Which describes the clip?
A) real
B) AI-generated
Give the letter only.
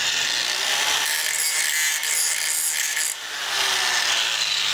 A